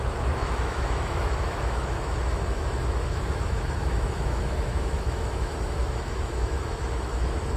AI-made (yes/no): yes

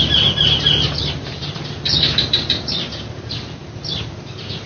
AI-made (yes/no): no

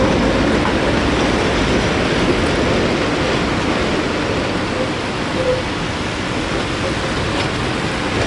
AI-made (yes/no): no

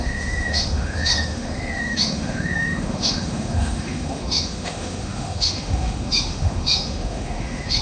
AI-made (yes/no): yes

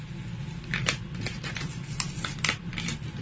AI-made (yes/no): no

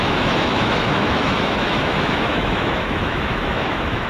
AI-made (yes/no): yes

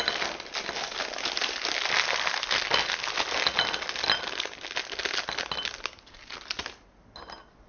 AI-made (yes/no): no